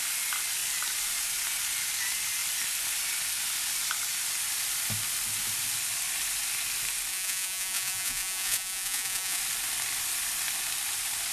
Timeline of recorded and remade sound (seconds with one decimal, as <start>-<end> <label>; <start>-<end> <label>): 0.0-7.1 recorded; 7.1-9.4 remade; 9.4-11.3 recorded